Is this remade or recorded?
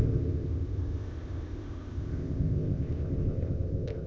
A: remade